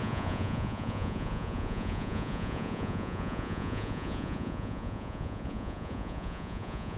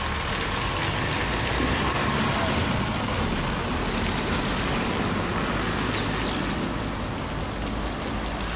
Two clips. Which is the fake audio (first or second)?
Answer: first